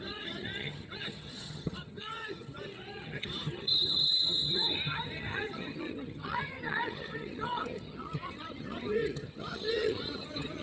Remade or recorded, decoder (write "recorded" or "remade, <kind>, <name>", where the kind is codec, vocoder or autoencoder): remade, vocoder, HiFi-GAN